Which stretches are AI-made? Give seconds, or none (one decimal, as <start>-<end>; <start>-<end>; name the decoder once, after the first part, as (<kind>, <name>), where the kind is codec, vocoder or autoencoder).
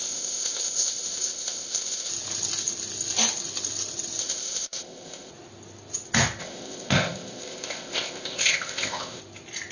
0.0-2.1 (codec, ZipCodec); 4.2-5.3; 6.4-9.2